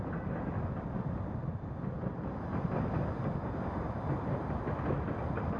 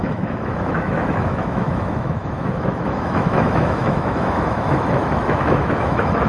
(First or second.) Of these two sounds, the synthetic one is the second